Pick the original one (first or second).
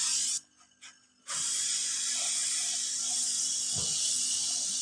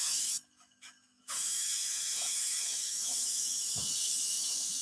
first